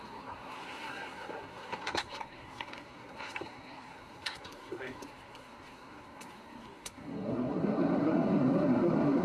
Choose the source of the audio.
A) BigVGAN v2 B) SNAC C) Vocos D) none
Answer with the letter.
B